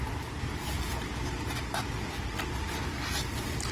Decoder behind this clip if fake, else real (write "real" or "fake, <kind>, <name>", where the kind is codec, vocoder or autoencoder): real